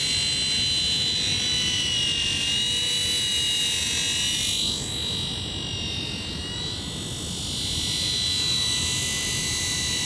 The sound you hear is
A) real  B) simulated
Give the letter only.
A